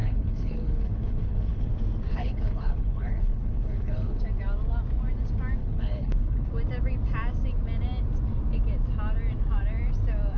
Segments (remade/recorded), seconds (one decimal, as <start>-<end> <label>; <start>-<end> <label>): 0.0-1.7 remade; 1.7-2.1 recorded; 2.1-4.2 remade; 4.2-5.6 recorded; 5.6-6.5 remade; 6.5-10.4 recorded